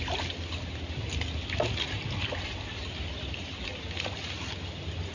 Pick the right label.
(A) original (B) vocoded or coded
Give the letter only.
A